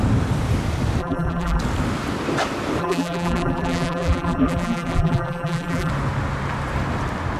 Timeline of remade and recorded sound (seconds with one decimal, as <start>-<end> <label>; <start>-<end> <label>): 0.0-1.0 recorded; 1.0-1.6 remade; 1.6-2.8 recorded; 2.8-5.9 remade; 5.9-7.4 recorded